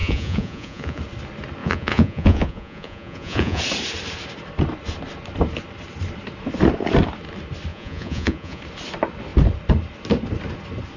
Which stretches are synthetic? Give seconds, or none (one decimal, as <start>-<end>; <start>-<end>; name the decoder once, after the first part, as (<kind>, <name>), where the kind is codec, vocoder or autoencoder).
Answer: 0.0-1.0 (vocoder, Vocos); 1.6-3.6; 7.7-8.6